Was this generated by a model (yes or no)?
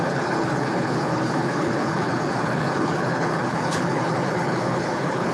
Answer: yes